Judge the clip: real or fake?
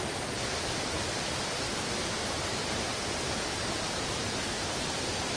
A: real